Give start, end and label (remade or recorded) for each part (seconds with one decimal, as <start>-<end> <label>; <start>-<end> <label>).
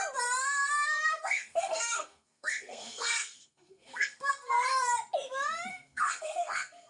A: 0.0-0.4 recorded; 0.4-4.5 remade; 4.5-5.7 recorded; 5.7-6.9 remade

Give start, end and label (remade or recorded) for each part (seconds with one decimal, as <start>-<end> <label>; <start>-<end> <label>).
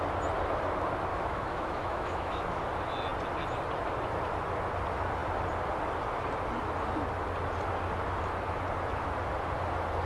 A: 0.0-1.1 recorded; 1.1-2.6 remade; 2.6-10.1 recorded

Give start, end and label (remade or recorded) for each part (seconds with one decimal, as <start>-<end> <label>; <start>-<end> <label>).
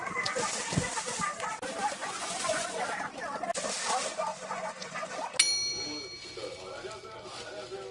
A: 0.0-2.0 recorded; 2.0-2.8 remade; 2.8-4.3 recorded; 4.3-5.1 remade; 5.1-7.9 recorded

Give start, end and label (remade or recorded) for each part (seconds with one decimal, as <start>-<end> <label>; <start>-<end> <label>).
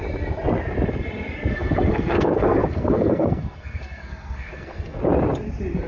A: 0.0-1.5 recorded; 1.5-5.0 remade; 5.0-5.9 recorded